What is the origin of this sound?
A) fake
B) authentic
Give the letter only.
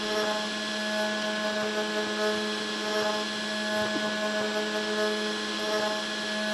B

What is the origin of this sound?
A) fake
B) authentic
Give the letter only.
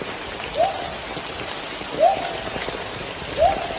B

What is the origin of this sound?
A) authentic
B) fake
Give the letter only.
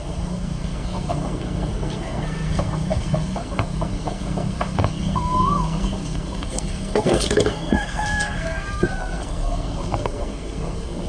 B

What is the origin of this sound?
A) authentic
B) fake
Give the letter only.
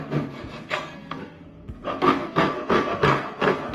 B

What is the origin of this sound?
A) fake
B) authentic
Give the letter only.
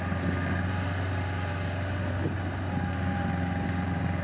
B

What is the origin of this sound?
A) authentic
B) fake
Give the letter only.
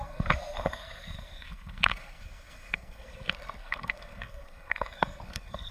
B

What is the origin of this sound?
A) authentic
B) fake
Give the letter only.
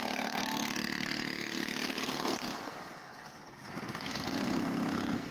B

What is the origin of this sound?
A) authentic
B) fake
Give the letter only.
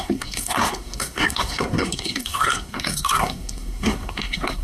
B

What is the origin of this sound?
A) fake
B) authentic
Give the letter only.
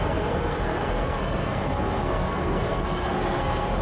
A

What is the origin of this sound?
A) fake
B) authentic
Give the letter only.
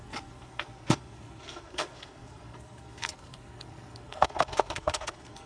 A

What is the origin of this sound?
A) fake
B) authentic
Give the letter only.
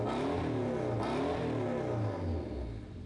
B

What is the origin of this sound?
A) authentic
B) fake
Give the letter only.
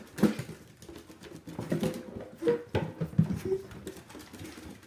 A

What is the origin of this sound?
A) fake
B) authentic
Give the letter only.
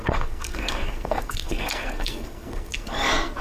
A